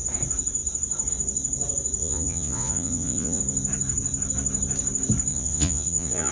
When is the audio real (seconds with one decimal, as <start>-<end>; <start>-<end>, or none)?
0.0-2.0; 3.4-5.3